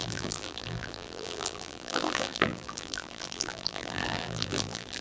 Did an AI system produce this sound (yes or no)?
yes